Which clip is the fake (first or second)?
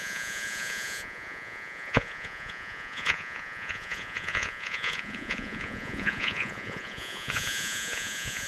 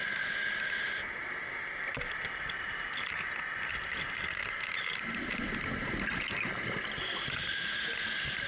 first